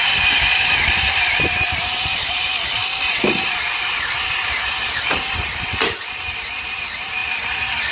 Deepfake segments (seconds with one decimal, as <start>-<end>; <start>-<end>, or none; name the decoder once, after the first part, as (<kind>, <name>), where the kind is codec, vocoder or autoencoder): 0.0-2.8 (vocoder, BigVGAN v2); 3.8-7.9